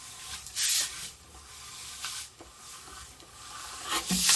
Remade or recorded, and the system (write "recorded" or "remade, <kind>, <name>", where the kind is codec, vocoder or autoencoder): remade, codec, DAC